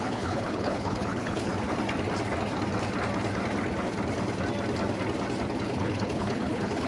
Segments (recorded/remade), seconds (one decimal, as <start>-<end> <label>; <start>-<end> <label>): 0.0-1.5 remade; 1.5-5.6 recorded; 5.6-6.9 remade